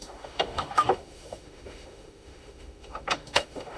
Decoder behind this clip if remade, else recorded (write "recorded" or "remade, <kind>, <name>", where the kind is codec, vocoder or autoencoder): remade, autoencoder, DAC-VAE